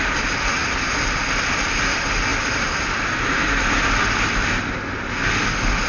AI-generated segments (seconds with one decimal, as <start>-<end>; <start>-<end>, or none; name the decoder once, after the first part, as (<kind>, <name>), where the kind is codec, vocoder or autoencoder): none